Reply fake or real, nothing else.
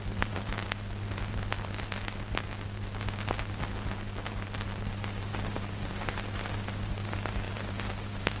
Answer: real